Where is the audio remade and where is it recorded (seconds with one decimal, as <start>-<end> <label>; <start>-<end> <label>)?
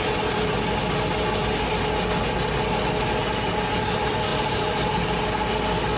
0.0-6.0 recorded